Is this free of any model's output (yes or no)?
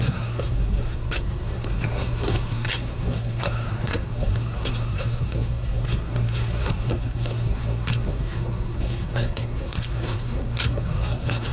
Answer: no